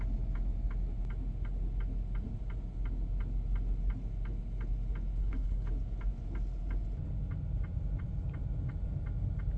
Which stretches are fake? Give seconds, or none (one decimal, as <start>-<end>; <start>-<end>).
5.2-5.7